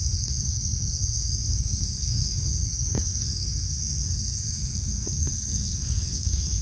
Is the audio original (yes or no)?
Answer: no